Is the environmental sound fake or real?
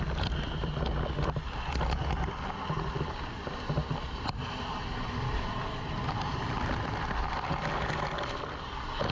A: real